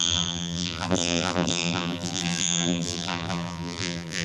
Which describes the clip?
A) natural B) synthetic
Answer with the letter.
B